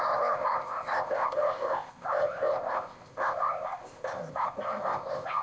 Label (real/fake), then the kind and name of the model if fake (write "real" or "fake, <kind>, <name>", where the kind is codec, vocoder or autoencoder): fake, codec, ZipCodec